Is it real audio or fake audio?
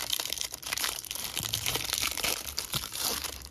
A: fake